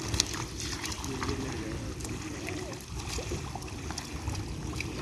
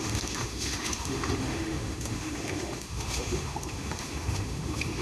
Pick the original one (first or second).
first